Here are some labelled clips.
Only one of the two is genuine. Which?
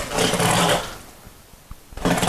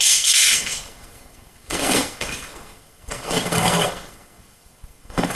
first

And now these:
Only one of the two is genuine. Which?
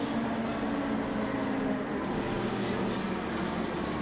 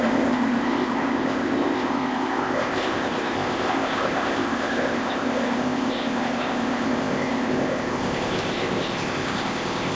first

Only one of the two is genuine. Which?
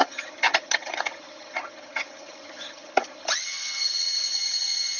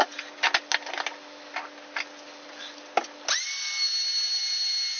second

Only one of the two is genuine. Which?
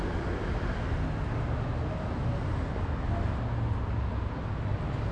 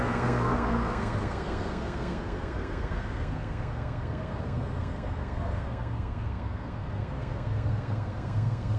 first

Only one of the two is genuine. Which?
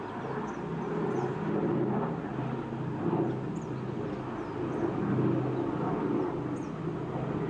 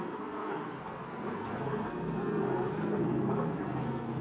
first